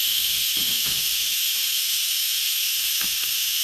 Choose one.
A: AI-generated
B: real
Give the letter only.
A